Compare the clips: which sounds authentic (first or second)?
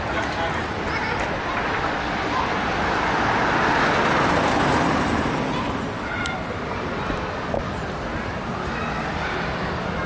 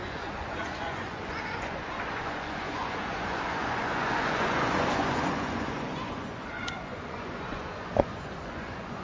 first